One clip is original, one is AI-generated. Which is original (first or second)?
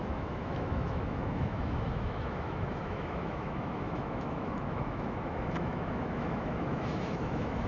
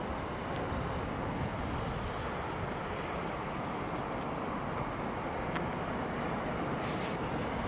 second